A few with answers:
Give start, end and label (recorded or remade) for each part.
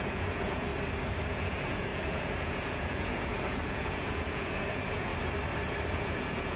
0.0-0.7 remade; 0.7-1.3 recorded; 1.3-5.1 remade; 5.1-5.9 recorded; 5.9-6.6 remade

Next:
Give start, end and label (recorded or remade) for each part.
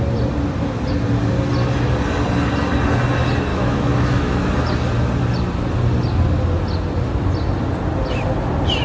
0.0-3.5 recorded; 3.5-4.5 remade; 4.5-8.8 recorded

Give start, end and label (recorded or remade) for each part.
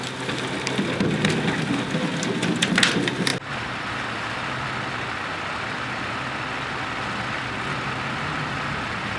0.0-9.2 recorded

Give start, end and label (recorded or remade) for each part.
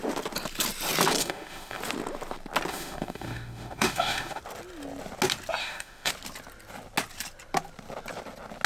0.0-1.2 recorded; 1.2-1.8 remade; 1.8-2.7 recorded; 2.7-4.4 remade; 4.4-5.6 recorded; 5.6-6.1 remade; 6.1-8.7 recorded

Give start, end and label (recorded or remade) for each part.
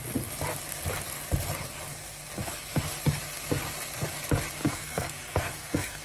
0.0-4.6 recorded; 4.6-6.0 remade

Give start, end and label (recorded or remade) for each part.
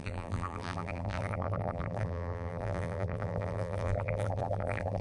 0.0-5.0 remade